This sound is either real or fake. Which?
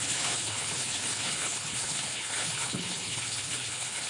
fake